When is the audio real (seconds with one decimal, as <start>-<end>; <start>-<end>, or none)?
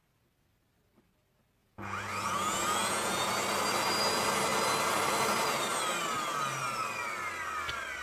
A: 0.0-1.6; 3.3-8.0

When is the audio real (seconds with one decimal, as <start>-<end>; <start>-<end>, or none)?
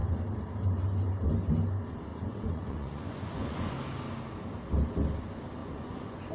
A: 0.0-2.1; 3.7-5.6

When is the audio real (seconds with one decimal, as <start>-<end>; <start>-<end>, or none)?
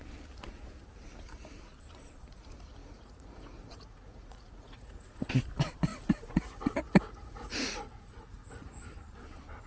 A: 0.0-2.8; 5.4-5.9; 8.8-9.7